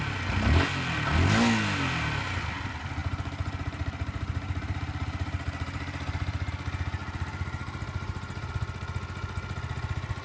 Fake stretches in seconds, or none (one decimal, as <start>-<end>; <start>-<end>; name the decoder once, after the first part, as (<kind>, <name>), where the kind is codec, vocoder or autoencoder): 3.0-6.5 (vocoder, BigVGAN v2); 7.0-8.5